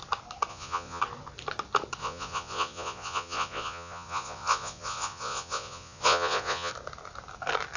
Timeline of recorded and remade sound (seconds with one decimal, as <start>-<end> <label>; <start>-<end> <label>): 0.0-0.5 recorded; 0.5-1.0 remade; 1.0-2.0 recorded; 2.0-6.7 remade; 6.7-7.8 recorded